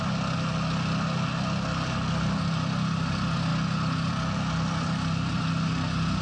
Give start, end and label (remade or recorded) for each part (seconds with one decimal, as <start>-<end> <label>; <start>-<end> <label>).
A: 0.0-6.2 recorded